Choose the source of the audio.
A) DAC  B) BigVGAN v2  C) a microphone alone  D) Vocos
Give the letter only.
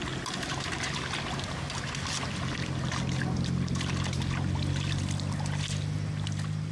C